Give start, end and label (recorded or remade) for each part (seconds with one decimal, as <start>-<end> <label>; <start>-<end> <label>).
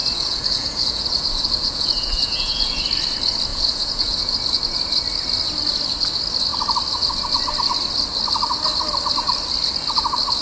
0.0-2.8 remade; 2.8-3.5 recorded; 3.5-4.4 remade; 4.4-10.4 recorded